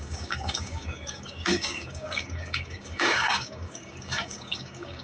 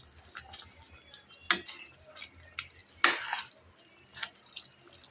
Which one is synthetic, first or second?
first